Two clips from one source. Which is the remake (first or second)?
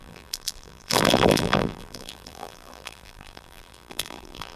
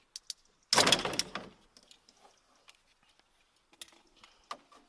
first